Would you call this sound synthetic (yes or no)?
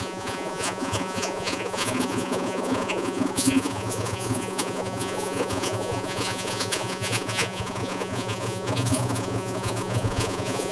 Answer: yes